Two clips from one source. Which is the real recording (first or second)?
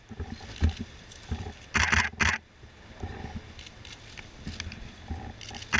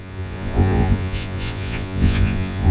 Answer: first